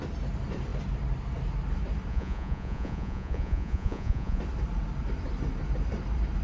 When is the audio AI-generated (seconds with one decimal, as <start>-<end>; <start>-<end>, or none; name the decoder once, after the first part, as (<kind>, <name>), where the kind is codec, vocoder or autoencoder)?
2.1-4.4 (vocoder, Vocos)